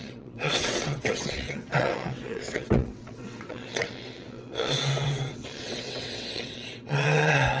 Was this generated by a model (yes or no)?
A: yes